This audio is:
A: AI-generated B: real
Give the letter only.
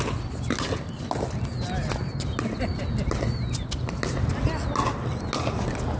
B